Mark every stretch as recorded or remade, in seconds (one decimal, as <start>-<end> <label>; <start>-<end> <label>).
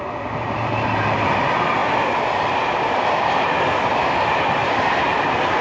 0.0-4.6 recorded; 4.6-5.6 remade